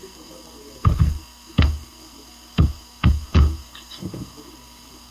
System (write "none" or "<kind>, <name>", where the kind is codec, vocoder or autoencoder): codec, SNAC